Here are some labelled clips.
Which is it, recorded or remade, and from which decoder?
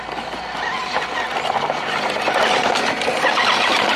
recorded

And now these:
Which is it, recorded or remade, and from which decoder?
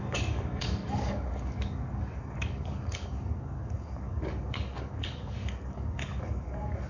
remade, codec, DAC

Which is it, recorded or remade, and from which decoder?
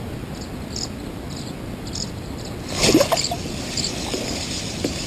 recorded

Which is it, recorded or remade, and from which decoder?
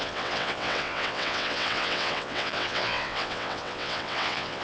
remade, vocoder, WaveNeXt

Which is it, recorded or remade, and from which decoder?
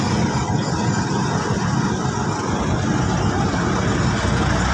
recorded